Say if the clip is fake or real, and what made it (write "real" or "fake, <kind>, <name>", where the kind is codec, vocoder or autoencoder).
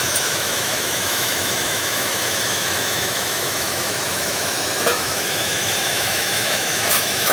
fake, autoencoder, DAC-VAE